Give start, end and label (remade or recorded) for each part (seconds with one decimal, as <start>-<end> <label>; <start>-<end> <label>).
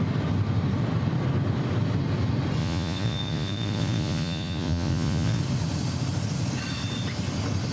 0.0-2.6 recorded; 2.6-5.4 remade; 5.4-7.7 recorded